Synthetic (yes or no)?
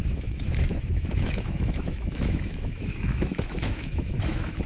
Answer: yes